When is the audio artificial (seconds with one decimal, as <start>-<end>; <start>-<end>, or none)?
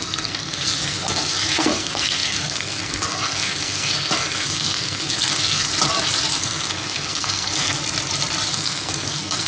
0.0-5.7; 6.3-7.8; 8.5-9.5